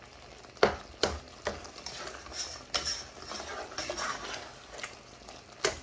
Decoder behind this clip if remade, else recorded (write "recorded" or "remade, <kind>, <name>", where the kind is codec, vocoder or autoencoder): recorded